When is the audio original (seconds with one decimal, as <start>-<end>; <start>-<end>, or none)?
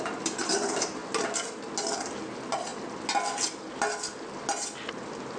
0.0-5.4